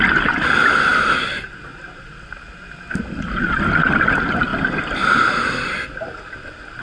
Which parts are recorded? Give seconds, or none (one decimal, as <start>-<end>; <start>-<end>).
0.0-6.8